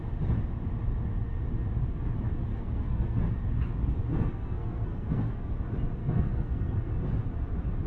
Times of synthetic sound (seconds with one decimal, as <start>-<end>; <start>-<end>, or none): 2.5-3.2; 4.1-5.5; 6.0-6.9